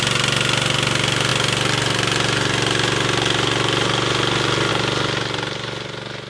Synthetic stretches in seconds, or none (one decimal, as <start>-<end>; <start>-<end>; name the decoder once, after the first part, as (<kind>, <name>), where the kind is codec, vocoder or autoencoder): none